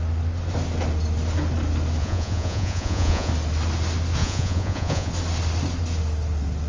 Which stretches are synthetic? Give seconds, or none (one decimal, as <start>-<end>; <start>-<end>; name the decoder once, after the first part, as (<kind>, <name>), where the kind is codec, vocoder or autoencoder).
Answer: 2.0-3.3 (vocoder, Vocos); 4.2-5.1